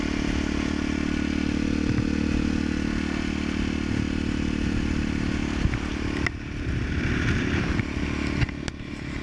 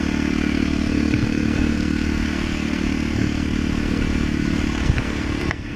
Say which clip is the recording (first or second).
first